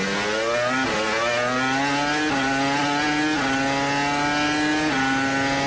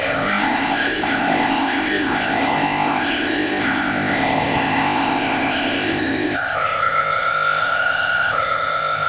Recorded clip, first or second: first